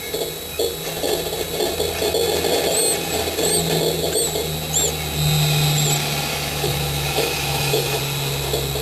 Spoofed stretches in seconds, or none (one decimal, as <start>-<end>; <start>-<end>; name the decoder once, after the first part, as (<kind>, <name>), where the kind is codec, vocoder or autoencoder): 6.3-8.0 (autoencoder, DAC-VAE)